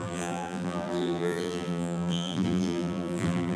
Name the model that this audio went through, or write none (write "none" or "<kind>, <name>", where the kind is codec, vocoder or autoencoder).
vocoder, BigVGAN v2